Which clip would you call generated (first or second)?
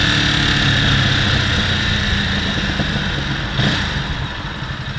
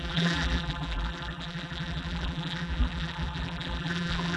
second